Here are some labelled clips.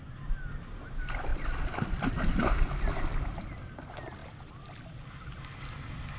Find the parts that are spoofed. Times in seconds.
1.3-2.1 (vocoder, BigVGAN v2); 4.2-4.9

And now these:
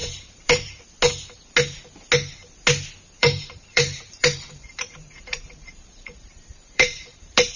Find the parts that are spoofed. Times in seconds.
0.0-0.8 (vocoder, BigVGAN v2); 3.2-7.6

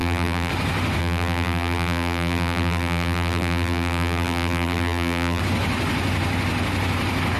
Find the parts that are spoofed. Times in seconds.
0.0-0.5 (vocoder, BigVGAN v2); 1.0-5.4

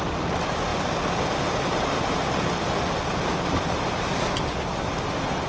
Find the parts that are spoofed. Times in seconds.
0.7-4.0 (vocoder, BigVGAN v2)